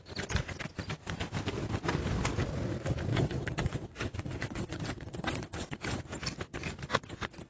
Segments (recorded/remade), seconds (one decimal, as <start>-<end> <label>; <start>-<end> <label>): 0.0-3.1 recorded; 3.1-6.0 remade; 6.0-7.5 recorded